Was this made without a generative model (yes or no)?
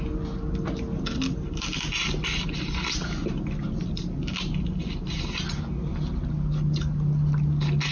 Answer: yes